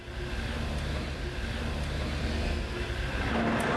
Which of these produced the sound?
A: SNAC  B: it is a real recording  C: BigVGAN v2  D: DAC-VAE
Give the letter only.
B